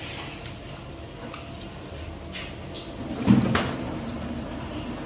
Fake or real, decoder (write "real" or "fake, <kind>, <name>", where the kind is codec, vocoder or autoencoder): real